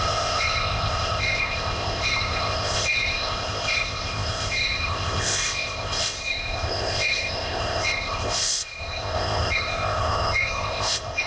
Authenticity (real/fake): fake